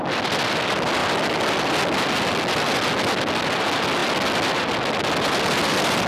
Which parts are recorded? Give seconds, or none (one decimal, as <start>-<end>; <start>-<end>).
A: 0.0-6.1